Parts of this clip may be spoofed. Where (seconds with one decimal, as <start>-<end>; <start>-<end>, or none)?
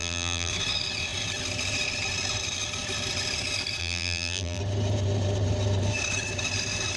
0.0-0.5; 3.8-4.6